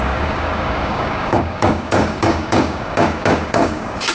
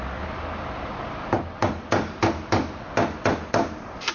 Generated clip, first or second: first